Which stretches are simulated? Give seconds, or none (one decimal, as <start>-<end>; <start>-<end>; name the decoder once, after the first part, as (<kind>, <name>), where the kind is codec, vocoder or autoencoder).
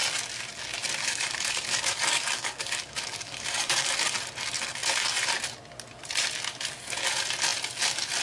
1.0-3.9 (codec, DAC)